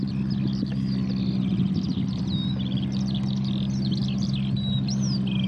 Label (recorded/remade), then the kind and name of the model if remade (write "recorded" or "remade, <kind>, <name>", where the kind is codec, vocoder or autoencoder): recorded